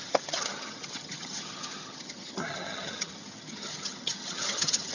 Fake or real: fake